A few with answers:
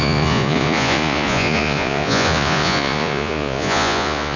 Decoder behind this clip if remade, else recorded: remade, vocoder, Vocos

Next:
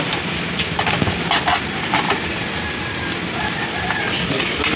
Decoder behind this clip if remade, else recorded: recorded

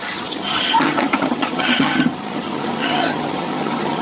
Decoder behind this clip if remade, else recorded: remade, vocoder, HiFi-GAN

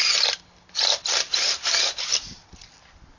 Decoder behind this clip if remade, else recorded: recorded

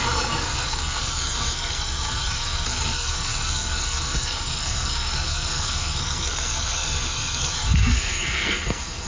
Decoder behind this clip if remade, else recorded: remade, codec, SNAC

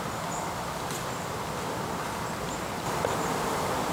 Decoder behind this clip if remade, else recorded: recorded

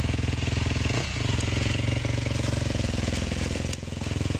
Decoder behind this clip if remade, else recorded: remade, vocoder, Vocos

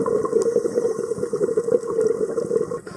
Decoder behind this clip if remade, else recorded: recorded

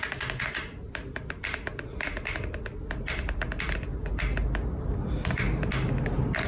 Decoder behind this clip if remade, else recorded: recorded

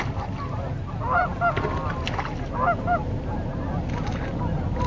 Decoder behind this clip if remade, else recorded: recorded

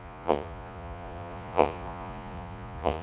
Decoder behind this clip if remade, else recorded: remade, vocoder, Vocos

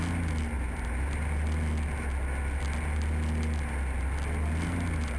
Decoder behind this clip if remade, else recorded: recorded